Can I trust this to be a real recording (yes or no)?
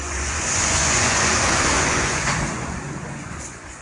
no